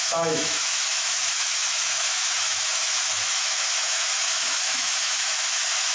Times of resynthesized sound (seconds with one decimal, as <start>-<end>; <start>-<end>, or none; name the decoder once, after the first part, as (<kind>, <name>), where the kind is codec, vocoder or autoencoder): 0.0-5.9 (autoencoder, DAC-VAE)